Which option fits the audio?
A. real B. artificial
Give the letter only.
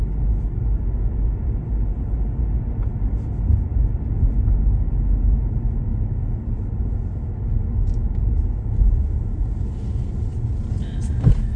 A